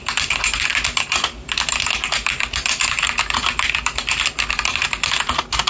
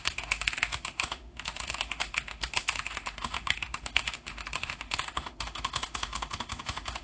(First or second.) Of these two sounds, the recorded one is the first